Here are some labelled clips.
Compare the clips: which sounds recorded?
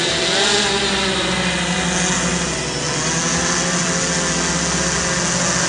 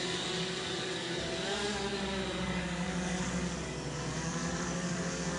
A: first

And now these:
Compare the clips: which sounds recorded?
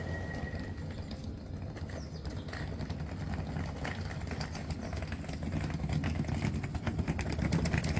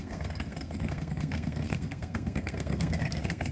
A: first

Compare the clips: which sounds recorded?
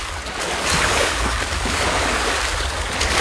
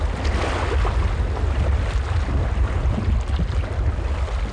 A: second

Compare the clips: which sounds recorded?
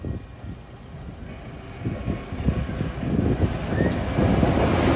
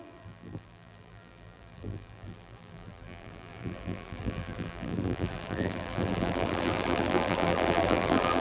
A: first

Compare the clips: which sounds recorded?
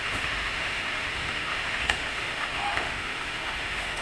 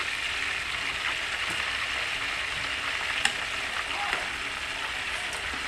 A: second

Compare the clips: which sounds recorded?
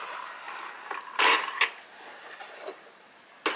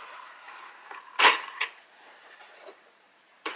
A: first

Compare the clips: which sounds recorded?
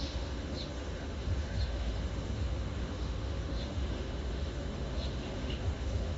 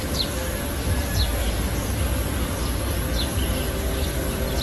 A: second